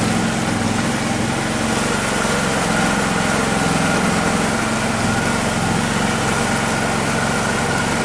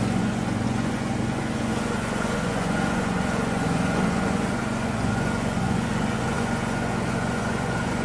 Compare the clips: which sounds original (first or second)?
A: first